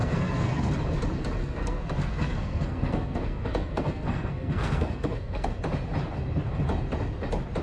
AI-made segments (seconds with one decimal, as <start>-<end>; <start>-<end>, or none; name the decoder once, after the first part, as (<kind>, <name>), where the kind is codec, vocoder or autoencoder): 0.0-0.7 (codec, SNAC); 1.4-5.6